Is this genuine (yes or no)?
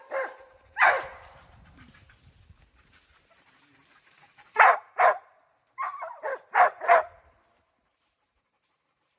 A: no